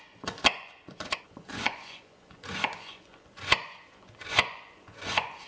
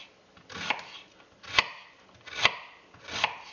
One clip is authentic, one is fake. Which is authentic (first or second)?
second